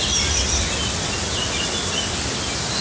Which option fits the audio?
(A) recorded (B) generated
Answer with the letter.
A